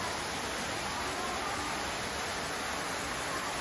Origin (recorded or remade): recorded